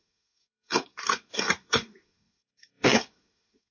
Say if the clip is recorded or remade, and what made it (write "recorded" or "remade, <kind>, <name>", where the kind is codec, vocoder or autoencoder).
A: remade, codec, SNAC